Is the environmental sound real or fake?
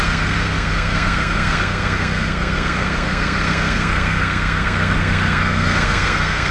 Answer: fake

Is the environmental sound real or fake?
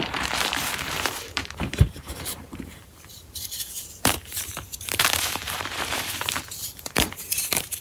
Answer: fake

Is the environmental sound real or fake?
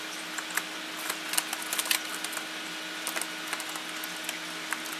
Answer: real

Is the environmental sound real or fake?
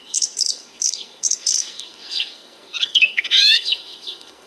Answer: fake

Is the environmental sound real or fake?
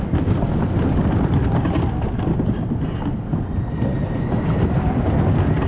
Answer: real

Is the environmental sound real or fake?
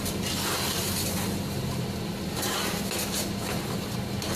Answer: real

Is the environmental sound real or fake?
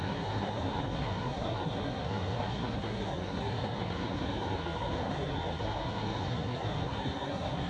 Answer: fake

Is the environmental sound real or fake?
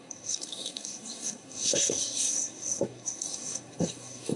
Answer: fake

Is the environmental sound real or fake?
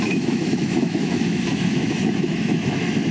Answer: fake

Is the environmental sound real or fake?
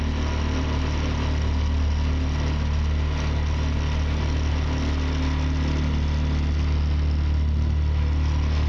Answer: real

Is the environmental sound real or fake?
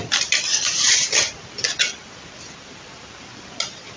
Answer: real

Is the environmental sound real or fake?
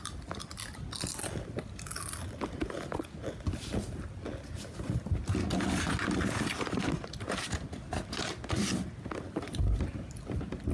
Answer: real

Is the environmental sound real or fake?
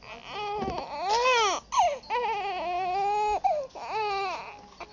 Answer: real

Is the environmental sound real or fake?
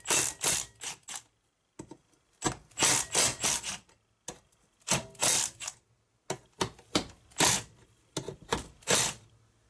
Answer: real